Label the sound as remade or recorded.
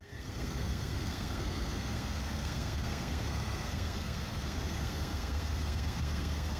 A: remade